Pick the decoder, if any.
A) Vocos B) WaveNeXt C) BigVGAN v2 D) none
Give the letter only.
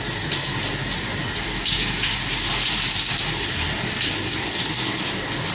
D